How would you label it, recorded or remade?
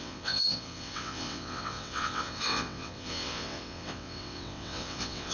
remade